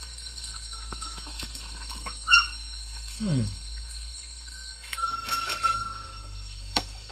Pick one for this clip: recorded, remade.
remade